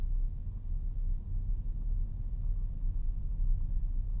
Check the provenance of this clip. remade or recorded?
recorded